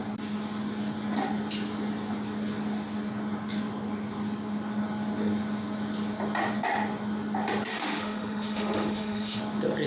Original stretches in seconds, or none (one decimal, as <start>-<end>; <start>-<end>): 0.0-7.7; 9.4-9.9

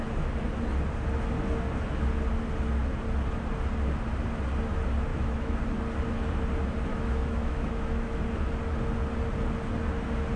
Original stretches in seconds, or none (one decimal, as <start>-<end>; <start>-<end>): 0.0-5.1; 5.6-6.9; 8.2-10.4